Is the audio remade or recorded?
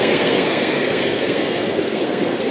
remade